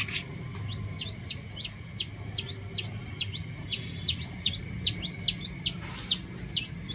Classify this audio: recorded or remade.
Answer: recorded